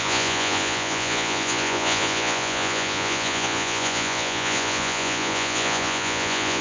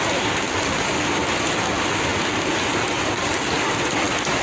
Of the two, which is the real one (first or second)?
second